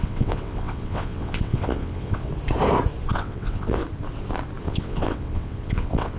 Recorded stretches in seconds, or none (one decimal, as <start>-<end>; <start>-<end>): 2.3-3.1; 3.8-4.6